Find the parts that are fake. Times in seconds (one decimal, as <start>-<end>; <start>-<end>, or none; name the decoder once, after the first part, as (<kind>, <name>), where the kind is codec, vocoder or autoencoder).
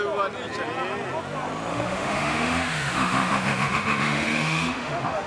1.7-5.3 (autoencoder, DAC-VAE)